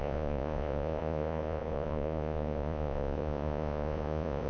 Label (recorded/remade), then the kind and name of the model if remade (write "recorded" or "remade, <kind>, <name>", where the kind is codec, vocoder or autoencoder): remade, vocoder, Vocos